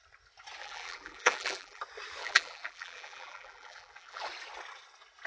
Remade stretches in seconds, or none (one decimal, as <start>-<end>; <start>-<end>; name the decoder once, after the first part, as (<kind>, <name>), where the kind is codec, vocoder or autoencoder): 0.6-1.8 (vocoder, BigVGAN v2); 2.2-4.2